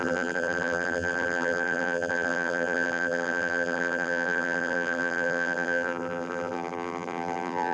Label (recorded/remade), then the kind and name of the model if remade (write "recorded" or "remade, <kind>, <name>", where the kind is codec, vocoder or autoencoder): remade, vocoder, BigVGAN v2